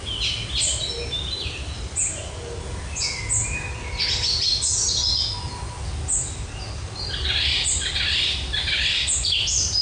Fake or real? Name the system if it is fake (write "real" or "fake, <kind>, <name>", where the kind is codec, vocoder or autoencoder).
real